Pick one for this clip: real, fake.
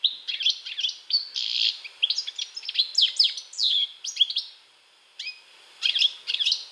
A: real